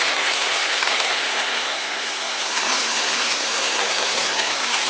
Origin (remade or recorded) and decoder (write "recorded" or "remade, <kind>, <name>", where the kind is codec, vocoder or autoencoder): remade, codec, SNAC